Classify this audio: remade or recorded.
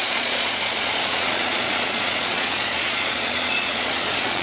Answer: remade